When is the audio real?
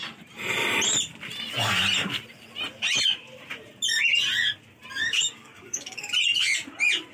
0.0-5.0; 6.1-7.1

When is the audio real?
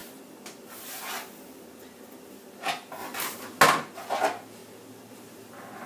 0.0-5.9